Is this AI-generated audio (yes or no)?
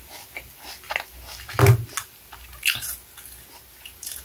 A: no